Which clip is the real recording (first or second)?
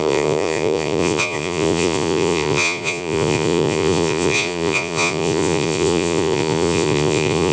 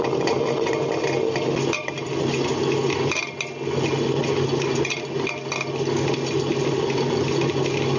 second